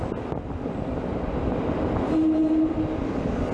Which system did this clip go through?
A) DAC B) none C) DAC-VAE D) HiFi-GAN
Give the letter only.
B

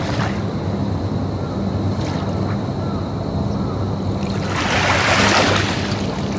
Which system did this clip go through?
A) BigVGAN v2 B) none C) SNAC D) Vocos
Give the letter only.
B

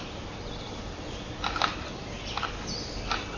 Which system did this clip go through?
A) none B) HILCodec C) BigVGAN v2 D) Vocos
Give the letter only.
A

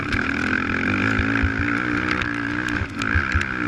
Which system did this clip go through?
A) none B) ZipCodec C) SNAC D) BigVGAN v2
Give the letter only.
A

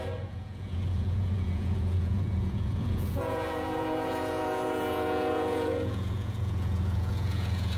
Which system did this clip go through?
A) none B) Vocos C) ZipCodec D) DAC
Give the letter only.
B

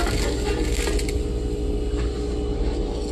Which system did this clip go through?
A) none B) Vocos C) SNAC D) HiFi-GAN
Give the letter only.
A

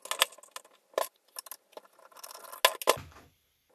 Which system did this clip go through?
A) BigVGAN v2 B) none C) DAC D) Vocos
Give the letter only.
B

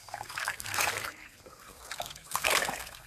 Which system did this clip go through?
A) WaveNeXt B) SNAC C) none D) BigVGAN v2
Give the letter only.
B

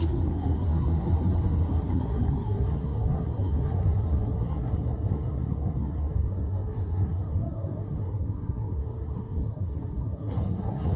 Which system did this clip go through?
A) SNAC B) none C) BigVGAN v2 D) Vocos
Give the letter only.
A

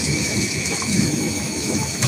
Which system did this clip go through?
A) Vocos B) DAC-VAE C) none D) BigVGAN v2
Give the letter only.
B